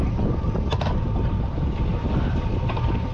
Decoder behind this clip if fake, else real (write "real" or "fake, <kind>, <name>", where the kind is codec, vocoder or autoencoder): real